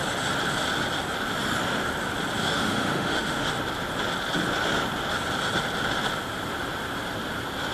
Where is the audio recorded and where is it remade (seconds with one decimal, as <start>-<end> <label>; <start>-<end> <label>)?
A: 0.0-2.4 recorded; 2.4-3.5 remade; 3.5-7.7 recorded